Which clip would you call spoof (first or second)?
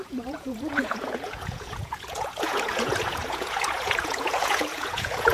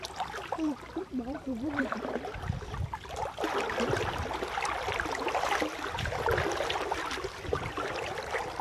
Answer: first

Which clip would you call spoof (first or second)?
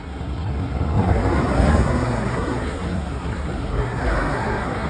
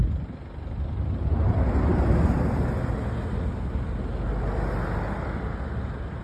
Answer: first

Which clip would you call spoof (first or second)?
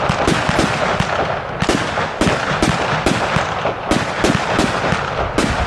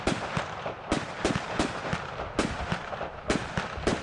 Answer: second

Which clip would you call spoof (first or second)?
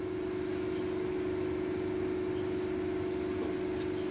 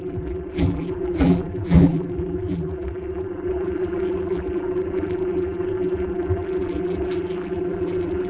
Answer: second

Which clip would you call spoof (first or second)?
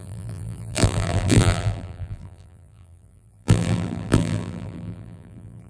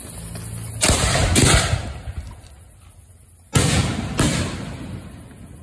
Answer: first